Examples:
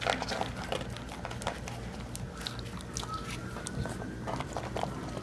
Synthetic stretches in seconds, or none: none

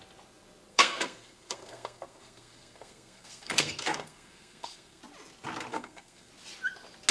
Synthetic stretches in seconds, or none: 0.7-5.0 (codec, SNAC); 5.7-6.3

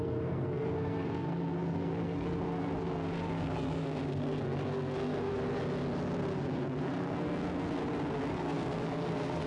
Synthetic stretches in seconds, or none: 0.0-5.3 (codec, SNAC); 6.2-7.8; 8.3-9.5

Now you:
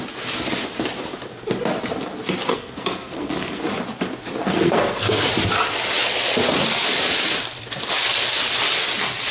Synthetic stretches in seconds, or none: 2.5-3.6 (codec, SNAC); 4.4-5.3

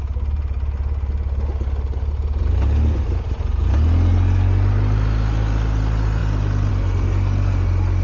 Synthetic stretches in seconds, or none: none

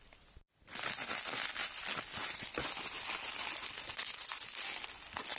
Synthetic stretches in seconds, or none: none